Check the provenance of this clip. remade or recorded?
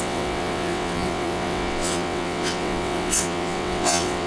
remade